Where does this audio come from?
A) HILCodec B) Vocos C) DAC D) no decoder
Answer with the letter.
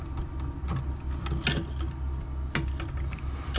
D